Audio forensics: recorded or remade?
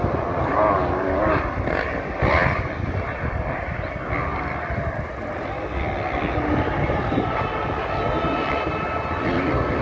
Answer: recorded